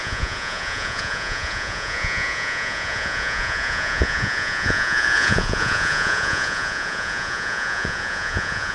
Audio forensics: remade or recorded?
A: remade